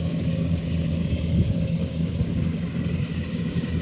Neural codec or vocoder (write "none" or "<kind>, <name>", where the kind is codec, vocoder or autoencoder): codec, DAC